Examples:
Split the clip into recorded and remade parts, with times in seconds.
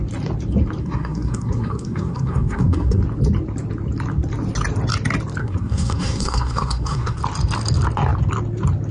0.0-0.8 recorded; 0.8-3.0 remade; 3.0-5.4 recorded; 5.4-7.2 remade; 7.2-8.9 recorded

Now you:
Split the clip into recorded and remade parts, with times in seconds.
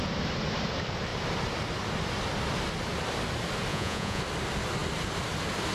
0.0-3.7 recorded; 3.7-4.2 remade; 4.2-5.7 recorded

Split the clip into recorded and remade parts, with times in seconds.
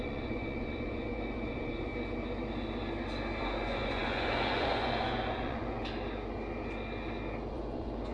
0.0-1.9 remade; 1.9-3.4 recorded; 3.4-5.8 remade; 5.8-7.5 recorded; 7.5-8.1 remade